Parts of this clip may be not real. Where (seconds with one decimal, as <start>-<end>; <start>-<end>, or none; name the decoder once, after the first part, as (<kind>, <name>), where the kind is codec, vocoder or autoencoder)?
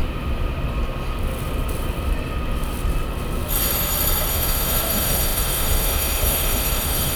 4.3-7.2 (autoencoder, DAC-VAE)